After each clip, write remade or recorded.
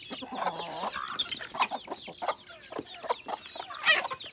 recorded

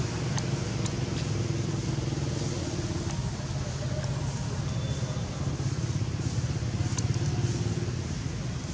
recorded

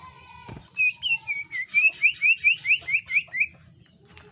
recorded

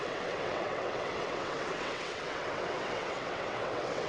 remade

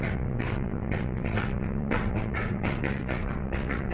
remade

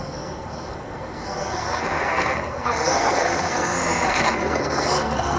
remade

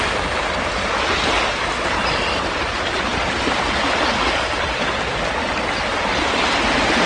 recorded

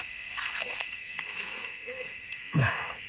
remade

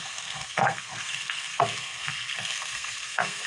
remade